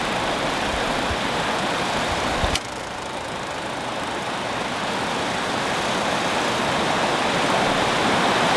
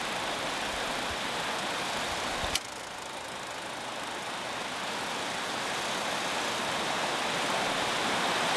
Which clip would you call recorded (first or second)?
second